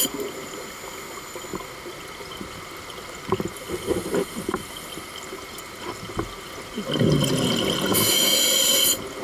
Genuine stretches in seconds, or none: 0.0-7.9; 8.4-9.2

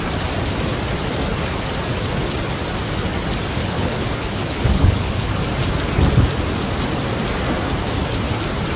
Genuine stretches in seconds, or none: 0.0-3.6; 5.3-8.8